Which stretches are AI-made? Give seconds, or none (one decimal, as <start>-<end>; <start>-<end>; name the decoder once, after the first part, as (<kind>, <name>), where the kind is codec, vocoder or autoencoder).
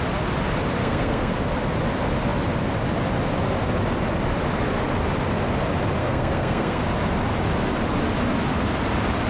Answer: 0.8-1.3 (codec, SNAC); 6.0-6.8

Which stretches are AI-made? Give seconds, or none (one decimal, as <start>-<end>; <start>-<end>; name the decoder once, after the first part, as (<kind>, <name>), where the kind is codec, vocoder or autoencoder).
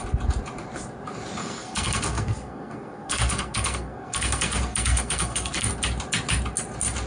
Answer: 1.4-5.7 (codec, SNAC)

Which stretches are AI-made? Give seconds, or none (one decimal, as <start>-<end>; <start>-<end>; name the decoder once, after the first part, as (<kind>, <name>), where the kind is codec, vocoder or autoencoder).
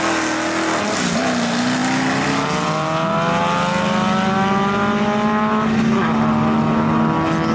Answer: none